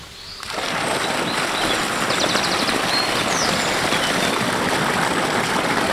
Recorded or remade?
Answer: recorded